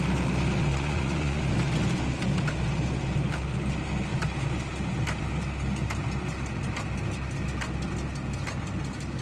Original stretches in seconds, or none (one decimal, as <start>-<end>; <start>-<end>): 0.0-0.7; 1.4-9.2